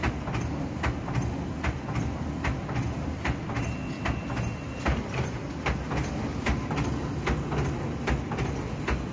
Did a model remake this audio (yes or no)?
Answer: no